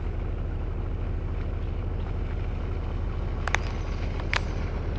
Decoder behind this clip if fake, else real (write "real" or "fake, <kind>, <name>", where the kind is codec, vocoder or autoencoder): real